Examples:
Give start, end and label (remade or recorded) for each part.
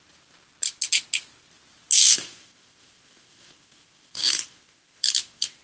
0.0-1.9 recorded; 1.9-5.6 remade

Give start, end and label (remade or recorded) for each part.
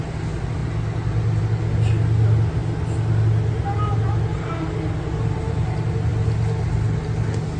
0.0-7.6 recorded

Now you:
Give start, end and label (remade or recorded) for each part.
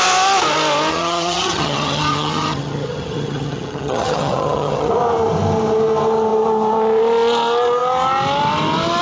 0.0-0.9 recorded; 0.9-4.9 remade; 4.9-9.0 recorded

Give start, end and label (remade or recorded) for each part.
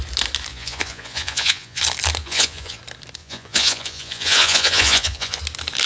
0.0-0.5 recorded; 0.5-1.8 remade; 1.8-2.2 recorded; 2.2-2.8 remade; 2.8-3.2 recorded; 3.2-5.4 remade; 5.4-5.9 recorded